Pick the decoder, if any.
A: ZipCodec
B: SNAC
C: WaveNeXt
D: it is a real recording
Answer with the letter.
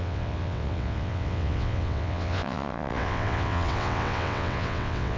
C